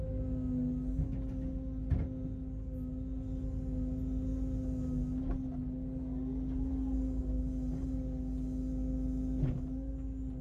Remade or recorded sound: recorded